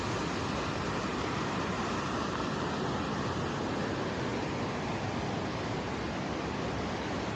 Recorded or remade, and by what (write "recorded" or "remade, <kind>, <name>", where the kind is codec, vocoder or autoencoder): recorded